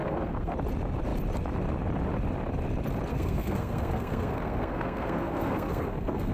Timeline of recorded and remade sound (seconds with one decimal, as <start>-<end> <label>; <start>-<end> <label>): 0.0-0.5 remade; 0.5-3.1 recorded; 3.1-6.3 remade